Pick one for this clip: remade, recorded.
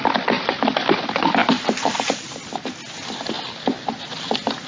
recorded